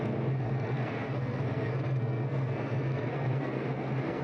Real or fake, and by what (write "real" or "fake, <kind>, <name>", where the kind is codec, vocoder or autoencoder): fake, codec, SNAC